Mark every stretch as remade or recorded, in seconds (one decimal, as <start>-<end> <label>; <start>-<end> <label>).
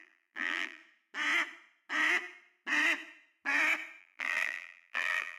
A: 0.0-0.8 remade; 0.8-4.0 recorded; 4.0-5.4 remade